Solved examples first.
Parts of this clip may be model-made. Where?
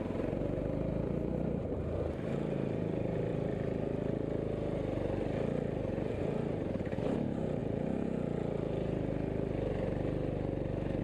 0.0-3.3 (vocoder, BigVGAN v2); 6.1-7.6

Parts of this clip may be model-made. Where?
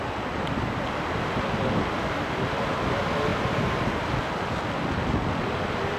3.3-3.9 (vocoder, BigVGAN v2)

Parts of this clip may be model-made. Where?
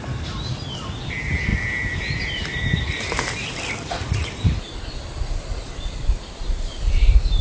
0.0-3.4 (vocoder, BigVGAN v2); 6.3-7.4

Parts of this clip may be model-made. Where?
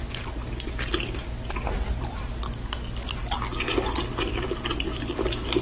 none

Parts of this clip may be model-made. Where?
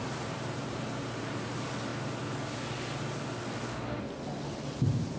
0.0-1.9 (vocoder, BigVGAN v2); 4.5-5.2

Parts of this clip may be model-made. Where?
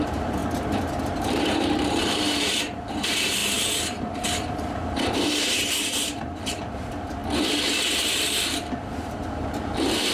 0.0-0.4 (vocoder, BigVGAN v2); 1.0-7.2; 7.9-10.1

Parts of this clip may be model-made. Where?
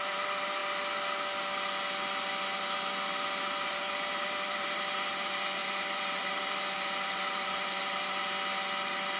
0.0-0.6 (vocoder, BigVGAN v2); 3.4-8.2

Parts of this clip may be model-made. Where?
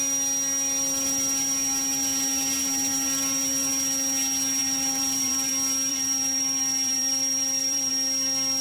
4.6-5.5 (vocoder, BigVGAN v2); 5.9-7.9